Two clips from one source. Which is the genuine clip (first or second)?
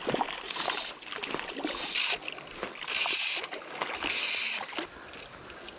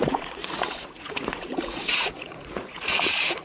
first